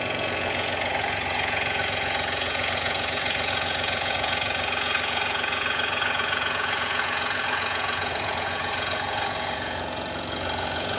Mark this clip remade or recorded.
remade